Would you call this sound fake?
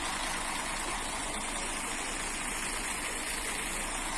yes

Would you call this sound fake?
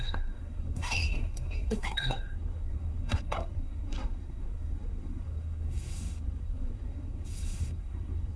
yes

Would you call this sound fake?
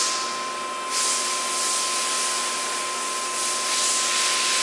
no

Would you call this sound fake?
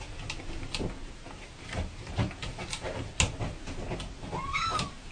no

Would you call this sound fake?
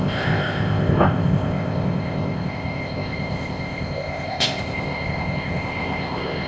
yes